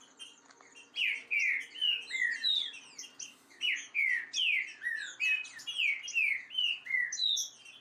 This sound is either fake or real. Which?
real